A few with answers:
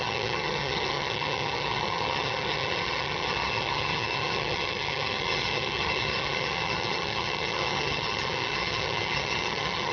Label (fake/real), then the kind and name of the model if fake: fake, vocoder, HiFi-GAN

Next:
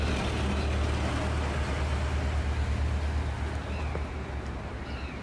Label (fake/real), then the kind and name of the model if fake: real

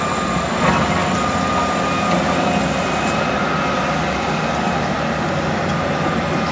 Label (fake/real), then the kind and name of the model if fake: real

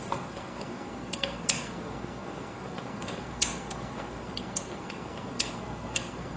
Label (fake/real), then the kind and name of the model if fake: fake, codec, SNAC